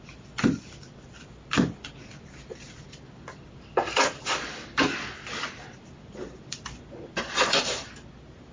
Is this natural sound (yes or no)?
no